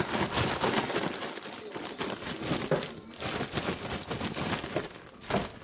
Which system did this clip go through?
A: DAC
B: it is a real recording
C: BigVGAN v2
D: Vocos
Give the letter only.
B